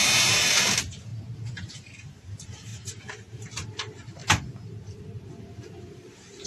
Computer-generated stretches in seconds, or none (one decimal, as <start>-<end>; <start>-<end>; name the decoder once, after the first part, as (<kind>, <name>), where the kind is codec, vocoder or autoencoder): 0.0-1.1 (vocoder, BigVGAN v2); 1.7-4.2; 5.0-6.5